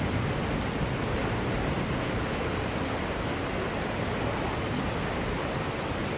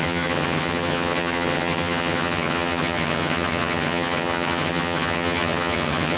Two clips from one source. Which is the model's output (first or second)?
second